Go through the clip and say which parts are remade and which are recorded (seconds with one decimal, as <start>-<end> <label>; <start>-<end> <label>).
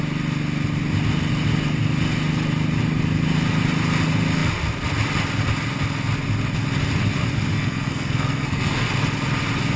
0.0-7.5 recorded; 7.5-8.9 remade; 8.9-9.8 recorded